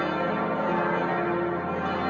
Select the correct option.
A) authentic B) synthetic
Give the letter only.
A